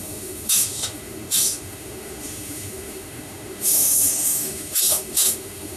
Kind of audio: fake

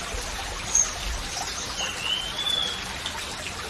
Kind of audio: real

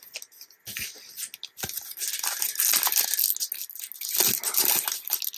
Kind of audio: real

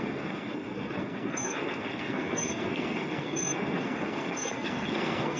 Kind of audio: fake